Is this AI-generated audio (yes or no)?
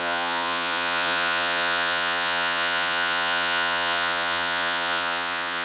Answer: yes